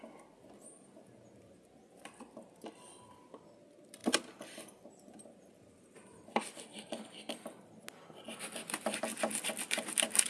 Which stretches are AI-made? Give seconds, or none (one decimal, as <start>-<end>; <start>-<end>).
none